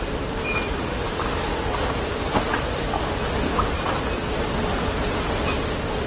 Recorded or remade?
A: recorded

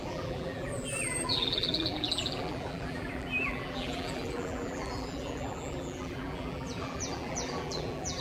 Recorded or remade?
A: remade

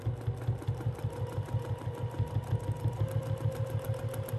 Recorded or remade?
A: recorded